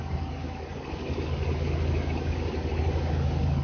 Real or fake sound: fake